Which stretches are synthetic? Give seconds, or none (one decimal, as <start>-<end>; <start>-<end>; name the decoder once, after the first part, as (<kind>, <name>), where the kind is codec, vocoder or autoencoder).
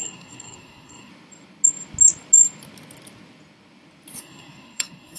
0.0-1.1 (codec, SNAC); 4.2-5.2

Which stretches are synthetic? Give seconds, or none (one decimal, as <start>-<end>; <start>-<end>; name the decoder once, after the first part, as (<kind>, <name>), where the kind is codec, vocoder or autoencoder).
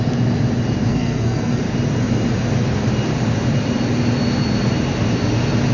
0.9-1.6 (codec, SNAC)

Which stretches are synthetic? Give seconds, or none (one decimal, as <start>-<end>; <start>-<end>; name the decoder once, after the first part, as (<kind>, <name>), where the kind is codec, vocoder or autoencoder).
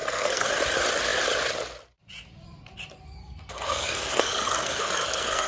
0.0-0.5 (codec, SNAC); 3.2-5.5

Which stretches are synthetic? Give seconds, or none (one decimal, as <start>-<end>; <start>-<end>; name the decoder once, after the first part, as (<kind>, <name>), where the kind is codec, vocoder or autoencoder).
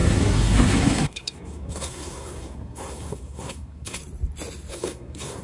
0.0-4.0 (codec, SNAC); 4.7-5.4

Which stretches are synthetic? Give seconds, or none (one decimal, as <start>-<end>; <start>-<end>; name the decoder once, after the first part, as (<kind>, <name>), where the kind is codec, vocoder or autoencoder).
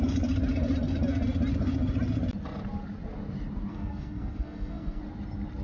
3.7-5.0 (codec, SNAC)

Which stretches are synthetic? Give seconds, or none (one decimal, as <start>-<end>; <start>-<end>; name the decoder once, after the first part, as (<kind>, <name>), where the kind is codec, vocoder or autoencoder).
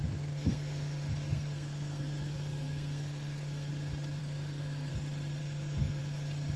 0.0-3.7 (codec, SNAC); 4.2-4.9; 5.4-6.0